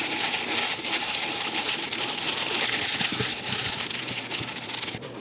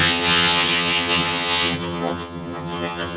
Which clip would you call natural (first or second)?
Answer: first